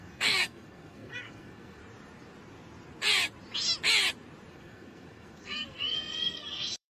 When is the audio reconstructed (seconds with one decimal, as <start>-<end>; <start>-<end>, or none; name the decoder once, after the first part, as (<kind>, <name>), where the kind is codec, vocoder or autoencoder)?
0.0-1.8 (codec, SNAC); 4.5-6.9